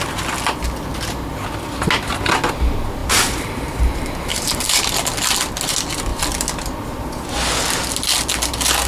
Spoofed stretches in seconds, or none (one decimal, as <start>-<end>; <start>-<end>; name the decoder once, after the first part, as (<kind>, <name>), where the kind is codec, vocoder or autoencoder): 3.0-3.8 (vocoder, BigVGAN v2); 4.3-4.9